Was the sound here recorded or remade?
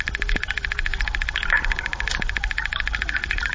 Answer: recorded